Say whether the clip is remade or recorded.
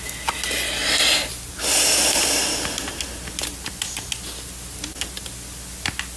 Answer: recorded